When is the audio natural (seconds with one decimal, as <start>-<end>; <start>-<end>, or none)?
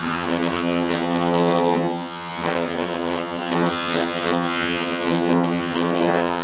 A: none